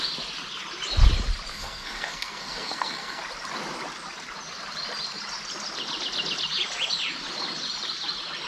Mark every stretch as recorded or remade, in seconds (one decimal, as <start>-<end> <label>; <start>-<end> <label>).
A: 0.0-1.5 recorded; 1.5-3.2 remade; 3.2-8.5 recorded